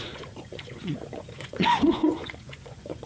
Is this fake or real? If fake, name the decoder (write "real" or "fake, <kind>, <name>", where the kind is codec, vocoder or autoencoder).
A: fake, vocoder, Vocos